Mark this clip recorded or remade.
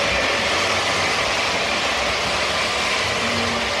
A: recorded